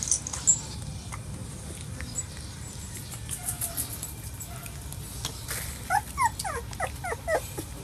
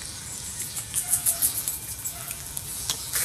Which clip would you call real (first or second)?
first